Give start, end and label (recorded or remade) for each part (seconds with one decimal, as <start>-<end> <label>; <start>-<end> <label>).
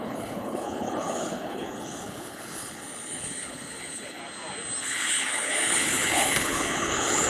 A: 0.0-4.2 remade; 4.2-4.8 recorded; 4.8-7.3 remade